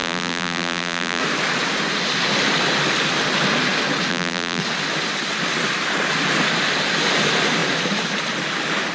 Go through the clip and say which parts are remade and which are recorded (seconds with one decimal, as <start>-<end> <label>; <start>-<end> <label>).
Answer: 0.0-1.2 remade; 1.2-4.1 recorded; 4.1-4.6 remade; 4.6-8.9 recorded